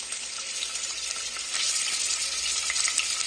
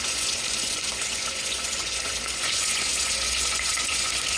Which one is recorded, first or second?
first